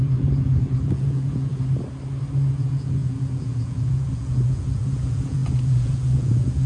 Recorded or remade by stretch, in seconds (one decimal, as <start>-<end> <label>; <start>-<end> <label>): 0.0-1.5 remade; 1.5-2.5 recorded; 2.5-6.7 remade